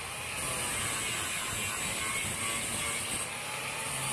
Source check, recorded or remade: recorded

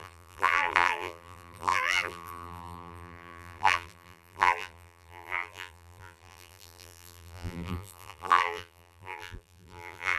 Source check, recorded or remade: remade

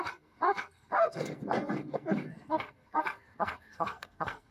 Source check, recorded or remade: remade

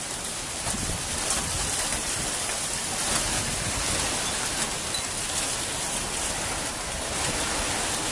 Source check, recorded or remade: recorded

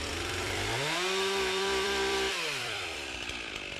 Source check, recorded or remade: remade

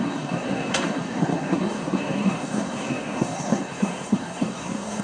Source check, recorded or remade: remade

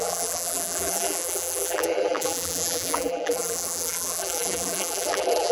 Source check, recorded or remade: remade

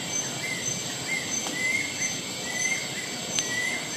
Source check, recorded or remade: recorded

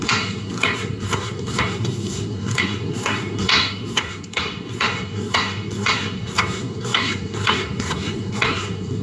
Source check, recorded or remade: remade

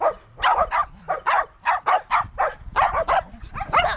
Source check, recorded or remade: recorded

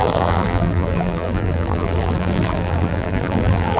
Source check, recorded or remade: remade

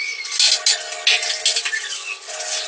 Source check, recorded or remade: recorded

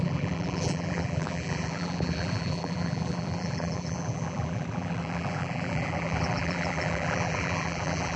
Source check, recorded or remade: remade